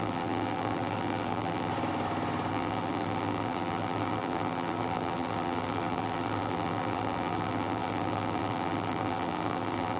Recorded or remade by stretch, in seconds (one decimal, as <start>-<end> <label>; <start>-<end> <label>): 0.0-1.7 remade; 1.7-2.5 recorded; 2.5-10.0 remade

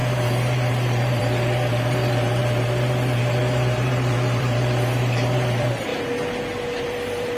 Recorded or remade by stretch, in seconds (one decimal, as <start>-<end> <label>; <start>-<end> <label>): 0.0-5.9 remade; 5.9-6.8 recorded; 6.8-7.4 remade